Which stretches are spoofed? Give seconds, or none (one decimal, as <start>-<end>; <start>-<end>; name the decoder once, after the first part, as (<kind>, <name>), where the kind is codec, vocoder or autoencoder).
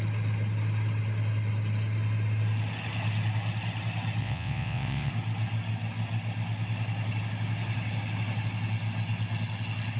4.2-5.1 (vocoder, WaveNeXt)